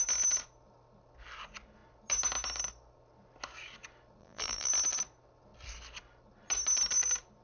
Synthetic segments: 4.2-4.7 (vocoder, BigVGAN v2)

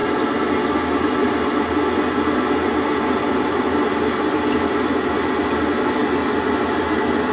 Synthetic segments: none

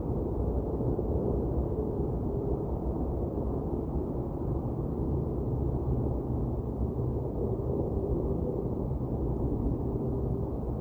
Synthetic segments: 4.0-4.6 (vocoder, BigVGAN v2)

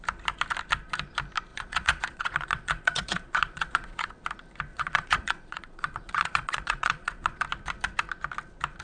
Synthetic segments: 1.5-4.1 (vocoder, Vocos); 4.7-7.4

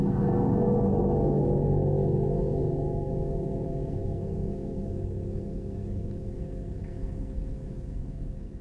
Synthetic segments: 0.0-8.6 (codec, SNAC)

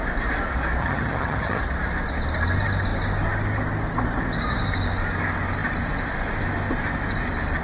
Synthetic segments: 0.8-1.6 (vocoder, HiFi-GAN)

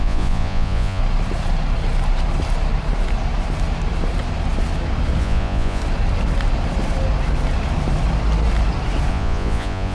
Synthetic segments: 0.0-1.0 (vocoder, Vocos); 5.2-5.8; 9.1-9.9

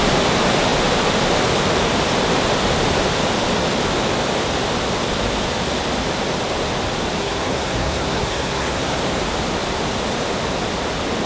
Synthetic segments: 7.2-9.0 (codec, SNAC)